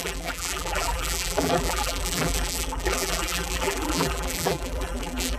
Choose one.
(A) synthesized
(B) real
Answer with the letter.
A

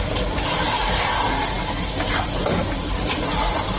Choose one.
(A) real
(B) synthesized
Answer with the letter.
B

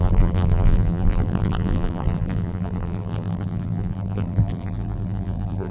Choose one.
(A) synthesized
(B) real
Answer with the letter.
A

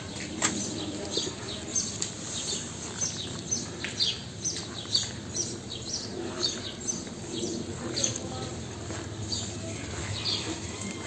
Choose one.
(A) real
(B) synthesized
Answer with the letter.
B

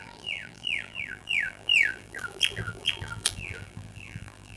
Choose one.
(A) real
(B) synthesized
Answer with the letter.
B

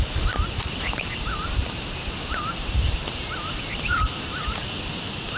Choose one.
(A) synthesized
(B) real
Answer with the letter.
A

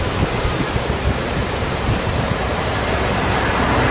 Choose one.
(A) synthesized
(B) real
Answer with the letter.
A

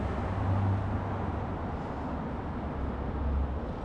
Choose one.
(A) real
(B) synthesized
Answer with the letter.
A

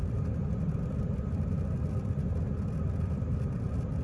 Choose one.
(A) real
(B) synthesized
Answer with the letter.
B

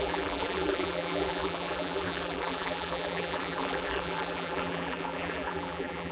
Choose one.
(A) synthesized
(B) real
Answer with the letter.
A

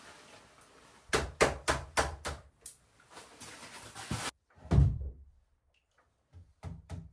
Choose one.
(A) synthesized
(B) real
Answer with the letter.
B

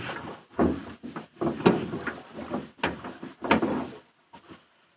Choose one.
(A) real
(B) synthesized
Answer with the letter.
A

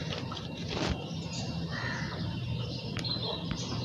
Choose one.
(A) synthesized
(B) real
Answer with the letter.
A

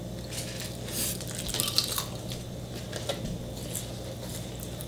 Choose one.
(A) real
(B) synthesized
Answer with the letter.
A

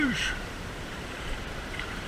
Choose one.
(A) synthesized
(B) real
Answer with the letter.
A